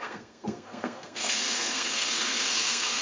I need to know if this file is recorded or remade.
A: remade